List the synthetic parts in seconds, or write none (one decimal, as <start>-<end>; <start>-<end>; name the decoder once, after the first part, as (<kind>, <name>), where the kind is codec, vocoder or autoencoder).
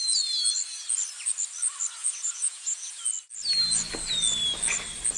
2.0-3.0 (vocoder, Vocos)